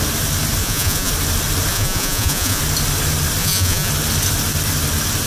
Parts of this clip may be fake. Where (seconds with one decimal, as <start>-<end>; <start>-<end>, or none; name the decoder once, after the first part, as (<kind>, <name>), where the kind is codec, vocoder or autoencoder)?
0.6-1.1 (vocoder, Vocos); 1.7-2.6; 3.4-3.9